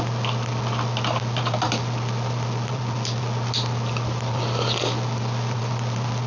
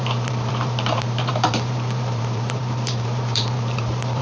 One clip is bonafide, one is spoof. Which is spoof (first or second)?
second